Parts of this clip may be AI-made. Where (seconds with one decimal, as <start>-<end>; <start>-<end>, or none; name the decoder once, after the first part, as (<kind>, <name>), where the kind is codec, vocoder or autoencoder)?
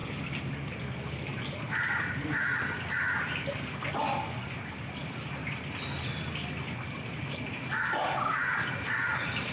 none